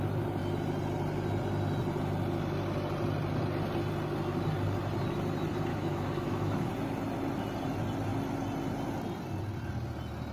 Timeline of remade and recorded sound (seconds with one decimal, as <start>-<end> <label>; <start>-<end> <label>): 0.0-5.7 recorded; 5.7-6.7 remade; 6.7-10.3 recorded